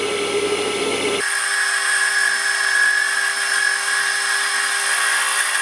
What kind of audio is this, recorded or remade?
recorded